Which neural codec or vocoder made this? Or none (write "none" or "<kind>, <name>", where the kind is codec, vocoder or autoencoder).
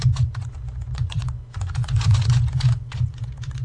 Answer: vocoder, Vocos